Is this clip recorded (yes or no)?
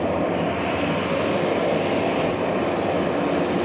yes